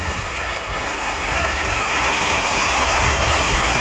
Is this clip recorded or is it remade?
remade